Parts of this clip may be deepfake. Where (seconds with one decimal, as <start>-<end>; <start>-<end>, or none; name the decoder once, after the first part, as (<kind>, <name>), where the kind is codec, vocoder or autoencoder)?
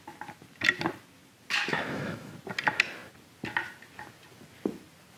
1.7-2.3 (autoencoder, DAC-VAE)